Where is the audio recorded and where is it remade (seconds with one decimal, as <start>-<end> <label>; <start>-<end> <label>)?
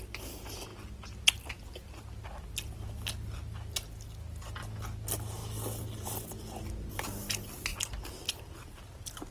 0.0-9.3 recorded